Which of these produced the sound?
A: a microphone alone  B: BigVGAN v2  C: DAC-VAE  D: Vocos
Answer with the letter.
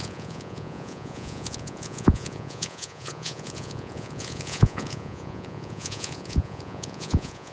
D